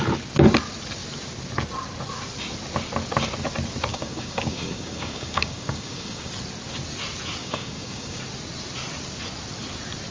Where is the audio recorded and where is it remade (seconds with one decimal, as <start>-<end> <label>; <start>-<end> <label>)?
0.0-3.9 recorded; 3.9-6.3 remade; 6.3-7.4 recorded; 7.4-8.2 remade; 8.2-10.1 recorded